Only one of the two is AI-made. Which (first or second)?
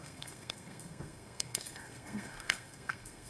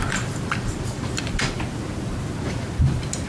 first